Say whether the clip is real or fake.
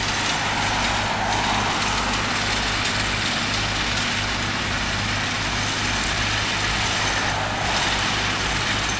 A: real